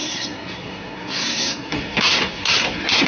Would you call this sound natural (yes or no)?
no